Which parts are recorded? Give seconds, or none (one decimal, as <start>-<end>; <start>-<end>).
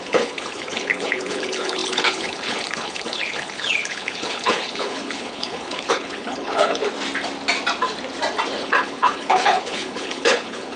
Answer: 6.8-8.6